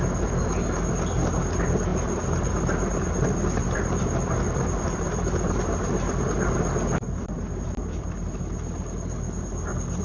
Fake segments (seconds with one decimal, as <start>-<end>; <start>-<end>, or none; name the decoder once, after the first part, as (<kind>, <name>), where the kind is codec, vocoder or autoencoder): 1.9-6.2 (vocoder, BigVGAN v2)